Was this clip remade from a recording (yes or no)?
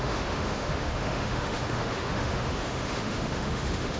yes